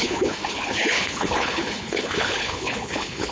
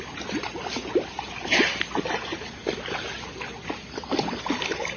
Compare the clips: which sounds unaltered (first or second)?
second